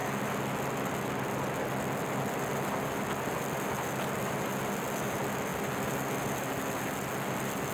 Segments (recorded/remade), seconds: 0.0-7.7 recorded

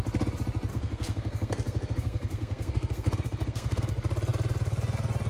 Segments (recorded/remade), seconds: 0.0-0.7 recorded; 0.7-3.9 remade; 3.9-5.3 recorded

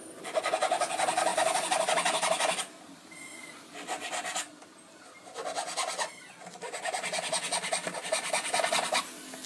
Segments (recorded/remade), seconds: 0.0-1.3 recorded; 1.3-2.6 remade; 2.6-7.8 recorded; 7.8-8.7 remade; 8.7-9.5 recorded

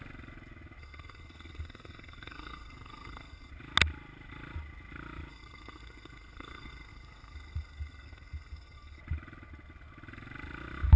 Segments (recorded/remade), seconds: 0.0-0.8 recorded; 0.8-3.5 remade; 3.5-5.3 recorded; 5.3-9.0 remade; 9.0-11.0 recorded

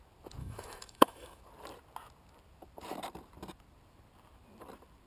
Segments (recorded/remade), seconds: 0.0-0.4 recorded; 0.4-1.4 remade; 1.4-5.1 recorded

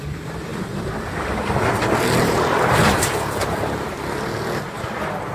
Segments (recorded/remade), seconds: 0.0-5.3 remade

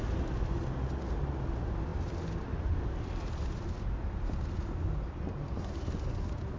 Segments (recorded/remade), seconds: 0.0-6.6 recorded